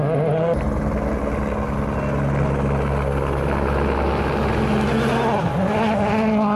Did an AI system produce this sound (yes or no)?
no